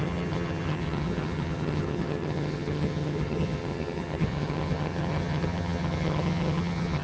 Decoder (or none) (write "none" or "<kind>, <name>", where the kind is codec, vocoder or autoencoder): vocoder, HiFi-GAN